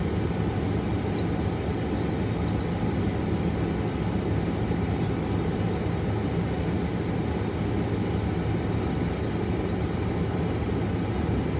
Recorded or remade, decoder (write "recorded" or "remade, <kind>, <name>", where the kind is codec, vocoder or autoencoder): recorded